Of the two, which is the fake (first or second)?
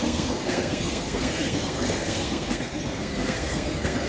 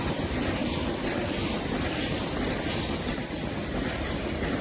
first